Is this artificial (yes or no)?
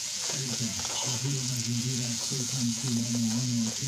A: yes